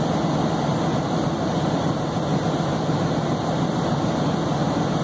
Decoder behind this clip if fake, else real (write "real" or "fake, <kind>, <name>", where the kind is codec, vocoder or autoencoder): real